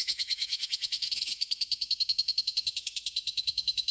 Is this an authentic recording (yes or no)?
no